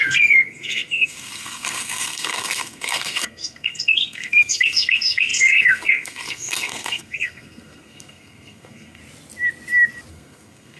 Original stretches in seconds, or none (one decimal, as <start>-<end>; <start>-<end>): 9.0-10.1